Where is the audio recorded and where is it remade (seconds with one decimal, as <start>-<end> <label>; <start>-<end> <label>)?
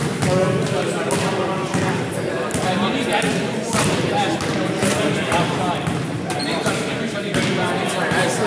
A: 0.0-8.5 recorded